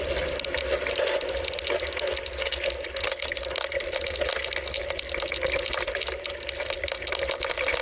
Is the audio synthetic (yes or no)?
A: no